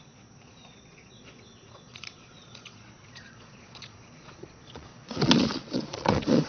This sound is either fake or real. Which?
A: fake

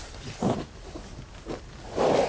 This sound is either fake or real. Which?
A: real